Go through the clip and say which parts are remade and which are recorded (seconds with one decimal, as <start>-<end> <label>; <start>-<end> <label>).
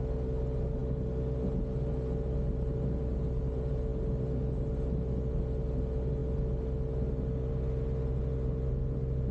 0.0-9.3 recorded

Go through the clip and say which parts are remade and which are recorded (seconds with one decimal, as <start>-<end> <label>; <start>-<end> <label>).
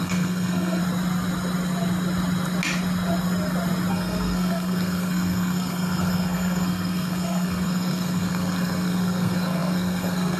0.0-0.8 remade; 0.8-3.9 recorded; 3.9-10.4 remade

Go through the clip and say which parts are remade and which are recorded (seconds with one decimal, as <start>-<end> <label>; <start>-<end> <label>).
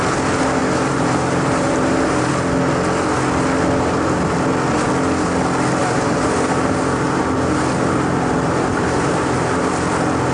0.0-0.6 recorded; 0.6-2.3 remade; 2.3-5.8 recorded; 5.8-7.2 remade; 7.2-8.7 recorded; 8.7-9.7 remade; 9.7-10.3 recorded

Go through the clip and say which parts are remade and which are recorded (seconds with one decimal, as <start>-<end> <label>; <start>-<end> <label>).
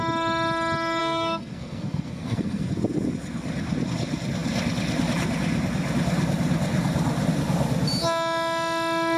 0.0-1.0 recorded; 1.0-2.7 remade; 2.7-9.2 recorded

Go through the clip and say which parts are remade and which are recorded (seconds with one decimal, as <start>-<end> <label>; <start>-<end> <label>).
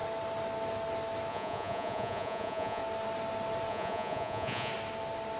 0.0-1.3 recorded; 1.3-2.8 remade; 2.8-3.7 recorded; 3.7-4.7 remade; 4.7-5.4 recorded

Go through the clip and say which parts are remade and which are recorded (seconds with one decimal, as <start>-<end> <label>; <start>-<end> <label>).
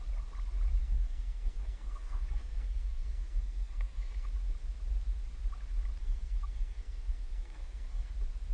0.0-0.8 recorded; 0.8-4.3 remade; 4.3-6.0 recorded; 6.0-8.1 remade; 8.1-8.5 recorded